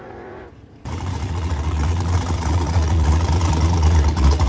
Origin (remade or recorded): remade